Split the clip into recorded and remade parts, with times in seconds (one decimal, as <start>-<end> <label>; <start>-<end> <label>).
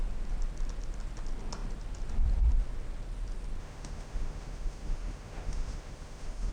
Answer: 0.0-3.6 recorded; 3.6-6.5 remade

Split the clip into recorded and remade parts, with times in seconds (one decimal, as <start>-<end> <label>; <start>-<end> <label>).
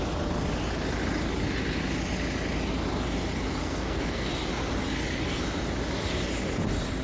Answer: 0.0-3.6 recorded; 3.6-4.3 remade; 4.3-7.0 recorded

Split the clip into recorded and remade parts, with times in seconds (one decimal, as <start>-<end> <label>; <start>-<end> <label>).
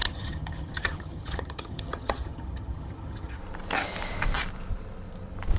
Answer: 0.0-3.4 remade; 3.4-5.6 recorded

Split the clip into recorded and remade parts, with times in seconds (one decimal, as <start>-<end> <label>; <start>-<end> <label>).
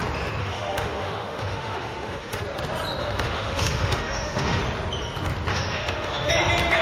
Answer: 0.0-0.4 recorded; 0.4-2.4 remade; 2.4-3.0 recorded; 3.0-4.6 remade; 4.6-5.5 recorded; 5.5-6.3 remade; 6.3-6.8 recorded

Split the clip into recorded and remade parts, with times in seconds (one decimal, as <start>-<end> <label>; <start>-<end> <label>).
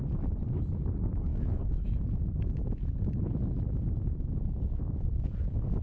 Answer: 0.0-5.8 recorded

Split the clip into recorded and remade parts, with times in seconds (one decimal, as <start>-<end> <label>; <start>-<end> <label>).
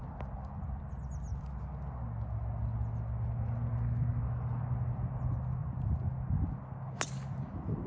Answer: 0.0-7.9 recorded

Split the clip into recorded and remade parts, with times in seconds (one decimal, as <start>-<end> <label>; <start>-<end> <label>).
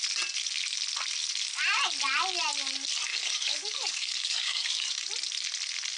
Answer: 0.0-3.1 recorded; 3.1-5.1 remade; 5.1-6.0 recorded